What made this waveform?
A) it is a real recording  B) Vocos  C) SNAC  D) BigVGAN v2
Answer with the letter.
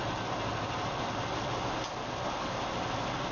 A